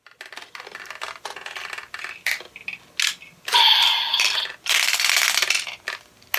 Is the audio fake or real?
real